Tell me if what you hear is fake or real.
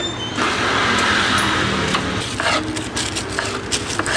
real